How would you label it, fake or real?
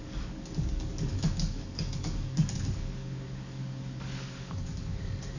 fake